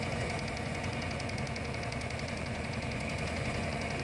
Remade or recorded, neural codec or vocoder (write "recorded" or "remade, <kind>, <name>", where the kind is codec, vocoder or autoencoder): remade, vocoder, Vocos